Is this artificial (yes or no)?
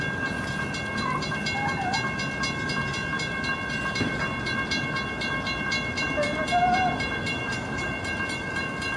no